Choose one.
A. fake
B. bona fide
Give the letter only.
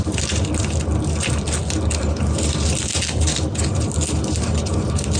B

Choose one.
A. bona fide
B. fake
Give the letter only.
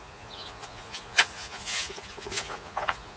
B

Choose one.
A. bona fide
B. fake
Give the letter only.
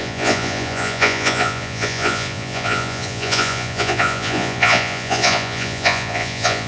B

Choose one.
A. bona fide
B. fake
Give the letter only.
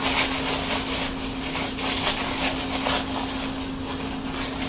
A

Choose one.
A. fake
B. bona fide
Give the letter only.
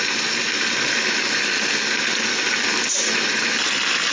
B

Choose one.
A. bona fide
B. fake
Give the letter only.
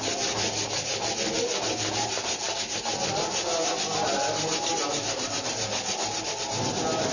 A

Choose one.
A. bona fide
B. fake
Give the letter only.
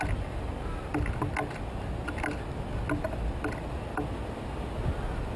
A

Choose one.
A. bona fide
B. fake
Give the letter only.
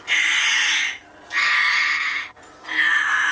A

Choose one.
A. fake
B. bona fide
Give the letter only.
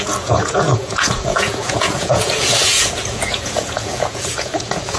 A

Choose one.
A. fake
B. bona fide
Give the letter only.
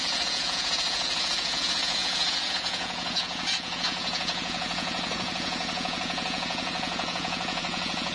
A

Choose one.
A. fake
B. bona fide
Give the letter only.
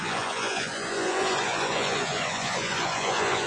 A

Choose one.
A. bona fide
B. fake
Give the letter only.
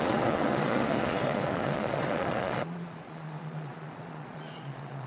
B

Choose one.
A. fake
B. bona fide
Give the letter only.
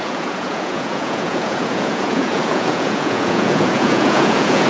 A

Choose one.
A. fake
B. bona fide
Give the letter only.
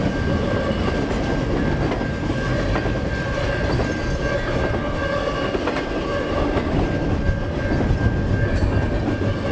B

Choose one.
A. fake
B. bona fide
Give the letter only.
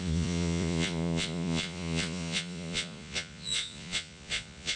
A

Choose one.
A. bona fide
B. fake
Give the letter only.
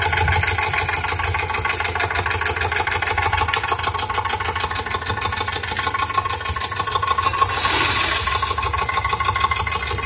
A